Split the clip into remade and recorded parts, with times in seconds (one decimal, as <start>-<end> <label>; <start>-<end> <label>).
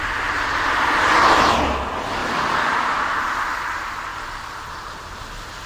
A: 0.0-2.2 remade; 2.2-3.5 recorded; 3.5-5.7 remade